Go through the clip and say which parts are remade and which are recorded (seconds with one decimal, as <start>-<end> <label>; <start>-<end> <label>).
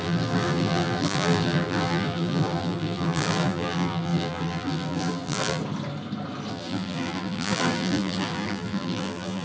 0.0-5.6 remade; 5.6-6.5 recorded; 6.5-9.4 remade